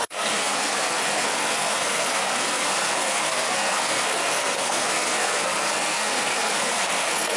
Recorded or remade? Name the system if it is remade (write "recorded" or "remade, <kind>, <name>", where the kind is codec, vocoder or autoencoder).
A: remade, codec, SNAC